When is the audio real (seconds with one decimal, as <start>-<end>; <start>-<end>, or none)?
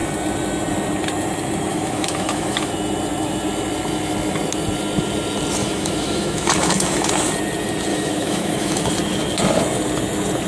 0.0-1.7; 2.7-5.6; 7.1-7.9; 8.9-10.5